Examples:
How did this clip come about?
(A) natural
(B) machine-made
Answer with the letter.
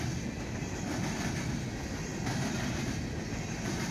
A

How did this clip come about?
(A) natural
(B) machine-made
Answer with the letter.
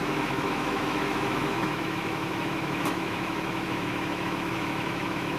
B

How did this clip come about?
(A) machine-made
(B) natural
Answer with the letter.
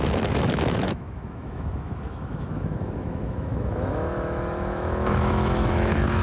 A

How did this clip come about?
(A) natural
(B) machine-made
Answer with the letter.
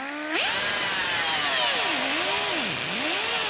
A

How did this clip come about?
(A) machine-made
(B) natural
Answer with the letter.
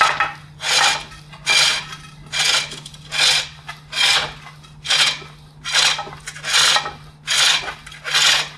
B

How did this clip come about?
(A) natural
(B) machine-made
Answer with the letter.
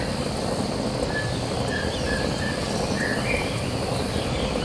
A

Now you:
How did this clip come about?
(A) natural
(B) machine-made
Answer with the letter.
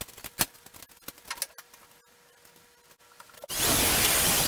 A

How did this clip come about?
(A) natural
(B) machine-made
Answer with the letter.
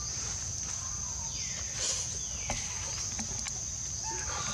A